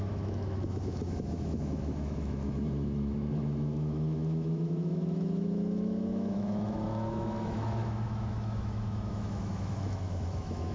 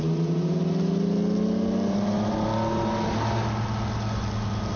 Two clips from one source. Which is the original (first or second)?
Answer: second